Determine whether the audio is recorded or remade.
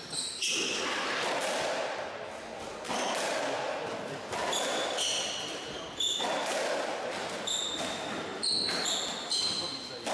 recorded